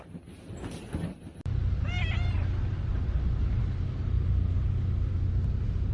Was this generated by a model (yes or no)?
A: no